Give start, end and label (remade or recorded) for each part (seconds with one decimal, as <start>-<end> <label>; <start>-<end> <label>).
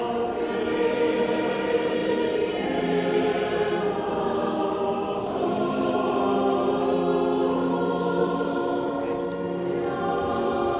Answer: 0.0-2.0 recorded; 2.0-6.2 remade; 6.2-8.2 recorded; 8.2-8.9 remade; 8.9-10.8 recorded